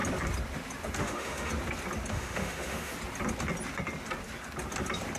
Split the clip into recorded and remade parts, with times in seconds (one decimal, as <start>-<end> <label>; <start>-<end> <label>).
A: 0.0-1.0 recorded; 1.0-1.5 remade; 1.5-2.1 recorded; 2.1-2.9 remade; 2.9-5.2 recorded